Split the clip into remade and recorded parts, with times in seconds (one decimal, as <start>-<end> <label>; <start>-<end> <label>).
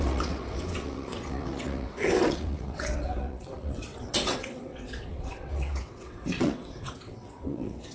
0.0-7.9 remade